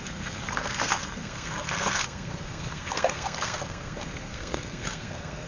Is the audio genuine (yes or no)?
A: no